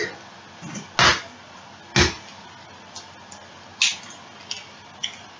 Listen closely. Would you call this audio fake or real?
real